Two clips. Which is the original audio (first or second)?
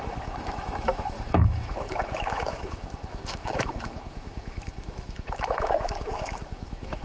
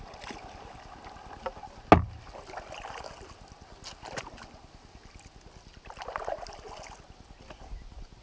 second